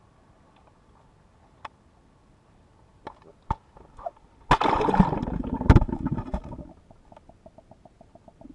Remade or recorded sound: recorded